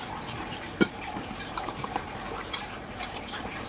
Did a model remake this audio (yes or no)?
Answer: yes